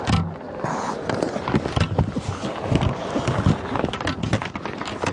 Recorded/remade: recorded